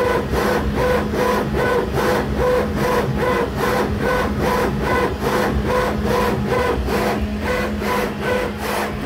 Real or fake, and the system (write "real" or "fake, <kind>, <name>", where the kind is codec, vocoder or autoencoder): real